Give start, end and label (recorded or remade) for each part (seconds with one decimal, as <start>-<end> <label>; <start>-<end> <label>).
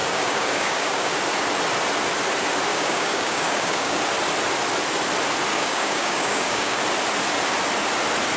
0.0-1.1 remade; 1.1-2.7 recorded; 2.7-4.0 remade; 4.0-5.5 recorded; 5.5-6.8 remade; 6.8-8.4 recorded